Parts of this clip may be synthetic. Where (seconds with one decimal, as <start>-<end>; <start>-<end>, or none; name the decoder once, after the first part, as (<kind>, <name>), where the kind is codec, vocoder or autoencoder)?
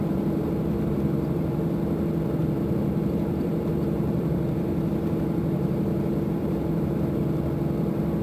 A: 0.0-1.6 (vocoder, BigVGAN v2); 2.4-7.2